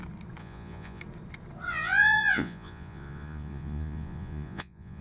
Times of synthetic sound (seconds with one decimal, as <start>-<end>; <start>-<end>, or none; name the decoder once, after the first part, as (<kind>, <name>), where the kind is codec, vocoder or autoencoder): 0.4-1.0 (vocoder, Vocos); 1.7-5.0